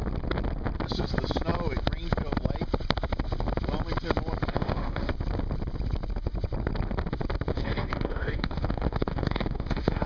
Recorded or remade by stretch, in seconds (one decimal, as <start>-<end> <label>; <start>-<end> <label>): 0.0-4.5 recorded; 4.5-5.1 remade; 5.1-7.5 recorded; 7.5-10.1 remade